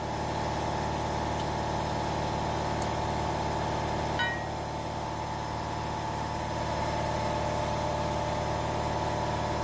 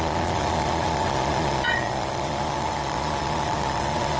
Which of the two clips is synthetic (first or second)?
second